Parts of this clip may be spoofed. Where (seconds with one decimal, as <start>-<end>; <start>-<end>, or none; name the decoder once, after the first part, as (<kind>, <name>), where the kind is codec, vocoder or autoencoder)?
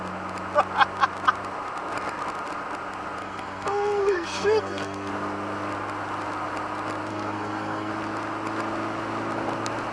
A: 3.2-5.1 (codec, SNAC); 7.1-7.9